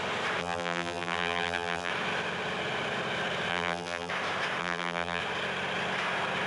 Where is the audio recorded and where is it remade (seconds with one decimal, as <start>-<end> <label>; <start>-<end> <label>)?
0.0-0.4 recorded; 0.4-1.9 remade; 1.9-3.5 recorded; 3.5-4.1 remade; 4.1-4.6 recorded; 4.6-5.2 remade; 5.2-6.5 recorded